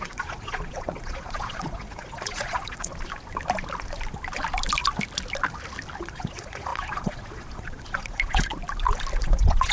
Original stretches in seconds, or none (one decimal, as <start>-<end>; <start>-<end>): 2.9-6.0; 8.5-9.2